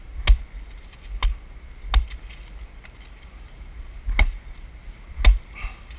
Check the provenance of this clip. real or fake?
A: real